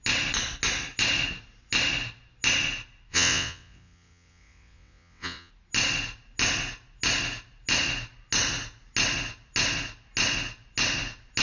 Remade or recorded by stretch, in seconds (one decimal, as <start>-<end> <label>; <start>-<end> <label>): 0.0-3.1 recorded; 3.1-5.5 remade; 5.5-11.4 recorded